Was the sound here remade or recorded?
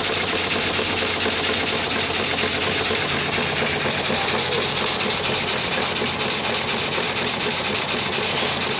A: recorded